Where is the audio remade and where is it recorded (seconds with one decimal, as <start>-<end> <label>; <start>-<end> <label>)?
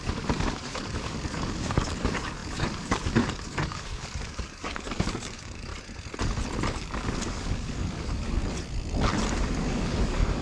0.0-5.7 remade; 5.7-6.7 recorded; 6.7-8.4 remade; 8.4-9.3 recorded; 9.3-10.4 remade